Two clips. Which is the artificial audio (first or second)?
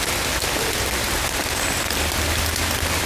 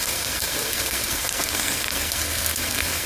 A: second